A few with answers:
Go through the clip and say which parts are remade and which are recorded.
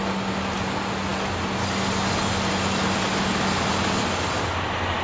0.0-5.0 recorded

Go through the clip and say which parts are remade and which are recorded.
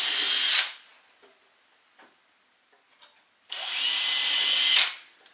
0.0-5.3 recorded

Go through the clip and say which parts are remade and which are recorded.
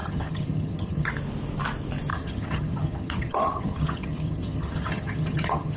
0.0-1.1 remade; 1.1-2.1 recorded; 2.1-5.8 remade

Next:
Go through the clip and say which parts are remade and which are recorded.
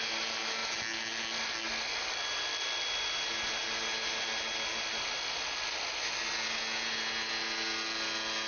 0.0-8.5 recorded